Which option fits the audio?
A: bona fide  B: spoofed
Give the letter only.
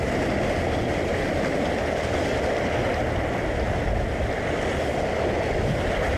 A